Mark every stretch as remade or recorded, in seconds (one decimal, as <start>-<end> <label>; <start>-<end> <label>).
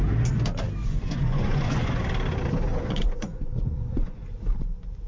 0.0-0.8 recorded; 0.8-2.0 remade; 2.0-2.7 recorded; 2.7-4.2 remade; 4.2-5.1 recorded